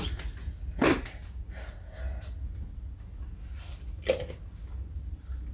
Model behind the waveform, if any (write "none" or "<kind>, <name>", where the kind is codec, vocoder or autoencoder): none